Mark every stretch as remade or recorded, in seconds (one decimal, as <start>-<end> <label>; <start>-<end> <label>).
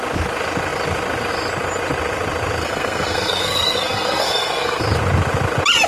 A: 0.0-2.6 recorded; 2.6-4.8 remade; 4.8-5.9 recorded